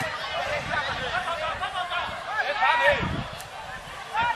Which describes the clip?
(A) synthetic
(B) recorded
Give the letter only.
B